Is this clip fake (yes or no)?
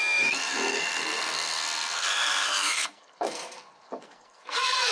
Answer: yes